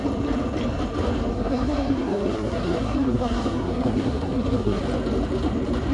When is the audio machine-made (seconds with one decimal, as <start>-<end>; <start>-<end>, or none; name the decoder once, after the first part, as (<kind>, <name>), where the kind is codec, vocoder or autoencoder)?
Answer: 1.3-4.8 (codec, SNAC)